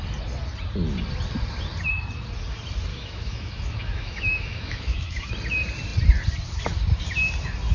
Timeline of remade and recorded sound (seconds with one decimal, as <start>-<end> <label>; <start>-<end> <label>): 0.0-2.9 recorded; 2.9-5.3 remade; 5.3-7.7 recorded